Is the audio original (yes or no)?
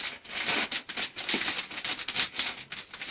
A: yes